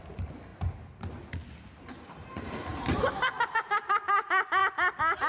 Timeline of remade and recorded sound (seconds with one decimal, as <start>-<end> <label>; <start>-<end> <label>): 0.0-2.7 recorded; 2.7-3.8 remade; 3.8-5.3 recorded